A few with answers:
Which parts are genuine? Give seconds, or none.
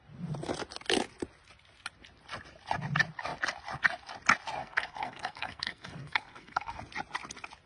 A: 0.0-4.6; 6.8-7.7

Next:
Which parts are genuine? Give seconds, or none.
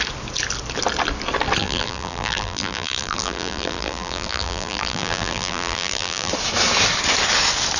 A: 0.0-1.6; 6.3-7.8